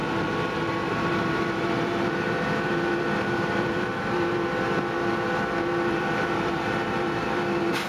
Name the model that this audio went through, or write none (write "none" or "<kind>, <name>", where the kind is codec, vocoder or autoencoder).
vocoder, BigVGAN v2